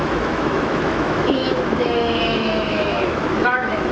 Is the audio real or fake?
fake